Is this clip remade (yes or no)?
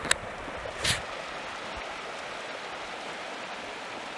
no